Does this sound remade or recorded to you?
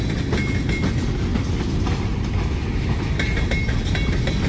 recorded